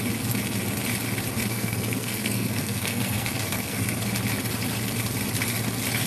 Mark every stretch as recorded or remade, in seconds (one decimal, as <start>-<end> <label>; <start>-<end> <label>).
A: 0.0-1.5 recorded; 1.5-4.1 remade; 4.1-6.1 recorded